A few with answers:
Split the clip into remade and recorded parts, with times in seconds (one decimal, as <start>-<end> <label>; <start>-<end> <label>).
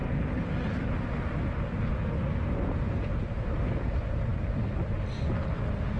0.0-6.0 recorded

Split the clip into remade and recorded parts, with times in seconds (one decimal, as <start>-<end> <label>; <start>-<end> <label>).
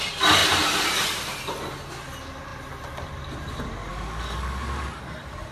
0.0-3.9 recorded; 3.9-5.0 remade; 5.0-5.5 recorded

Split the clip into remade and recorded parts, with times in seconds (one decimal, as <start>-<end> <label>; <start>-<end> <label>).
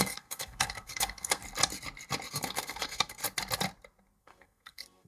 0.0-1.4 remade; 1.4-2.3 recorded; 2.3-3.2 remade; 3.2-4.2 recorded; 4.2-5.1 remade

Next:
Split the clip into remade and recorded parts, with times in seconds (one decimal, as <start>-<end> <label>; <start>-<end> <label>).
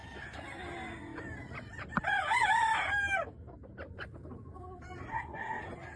0.0-5.1 recorded; 5.1-5.6 remade; 5.6-6.0 recorded